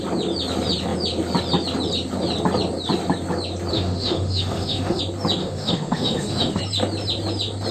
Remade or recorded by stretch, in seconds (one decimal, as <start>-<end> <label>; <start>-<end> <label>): 0.0-3.7 recorded; 3.7-5.0 remade; 5.0-5.4 recorded; 5.4-6.6 remade; 6.6-7.7 recorded